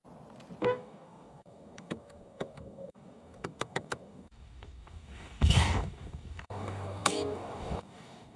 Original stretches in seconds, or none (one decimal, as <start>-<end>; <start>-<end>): 0.0-0.6